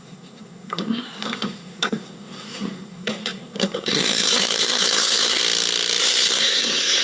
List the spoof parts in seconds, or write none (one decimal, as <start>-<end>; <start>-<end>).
0.0-5.4; 6.0-7.0